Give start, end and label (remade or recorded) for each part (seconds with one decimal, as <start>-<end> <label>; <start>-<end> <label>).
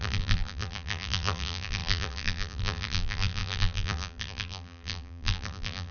0.0-5.9 remade